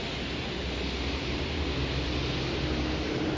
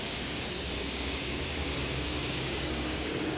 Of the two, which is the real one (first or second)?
first